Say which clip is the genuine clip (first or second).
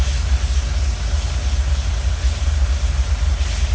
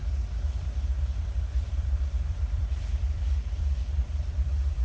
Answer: first